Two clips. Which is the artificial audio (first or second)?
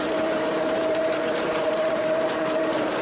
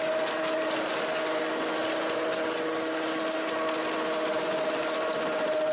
first